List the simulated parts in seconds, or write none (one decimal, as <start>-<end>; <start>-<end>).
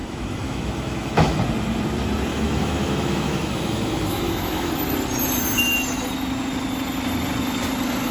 0.0-1.4; 2.3-4.7